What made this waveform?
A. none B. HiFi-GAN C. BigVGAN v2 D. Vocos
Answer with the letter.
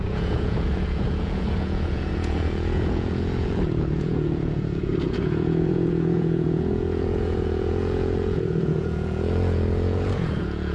D